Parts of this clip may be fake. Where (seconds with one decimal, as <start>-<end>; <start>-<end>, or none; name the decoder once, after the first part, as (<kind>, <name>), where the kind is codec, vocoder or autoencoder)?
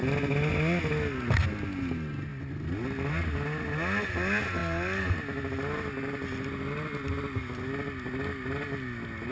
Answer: none